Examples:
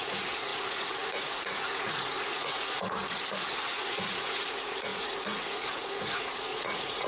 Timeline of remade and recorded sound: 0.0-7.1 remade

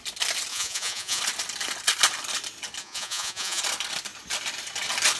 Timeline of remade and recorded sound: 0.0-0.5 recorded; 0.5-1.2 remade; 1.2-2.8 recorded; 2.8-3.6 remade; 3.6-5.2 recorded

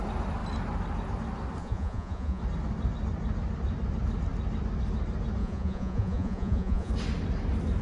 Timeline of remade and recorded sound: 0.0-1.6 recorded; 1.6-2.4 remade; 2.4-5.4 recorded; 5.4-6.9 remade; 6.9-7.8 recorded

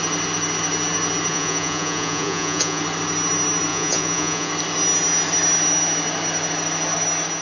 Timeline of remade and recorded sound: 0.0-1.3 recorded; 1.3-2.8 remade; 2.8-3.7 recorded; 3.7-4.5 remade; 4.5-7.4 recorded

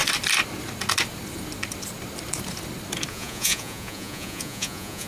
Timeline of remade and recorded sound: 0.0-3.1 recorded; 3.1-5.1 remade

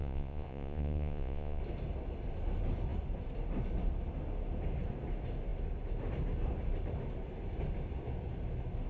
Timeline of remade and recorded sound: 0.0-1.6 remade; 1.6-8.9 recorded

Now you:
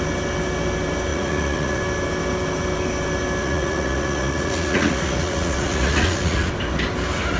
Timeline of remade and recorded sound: 0.0-1.1 recorded; 1.1-1.8 remade; 1.8-3.4 recorded; 3.4-6.5 remade; 6.5-7.4 recorded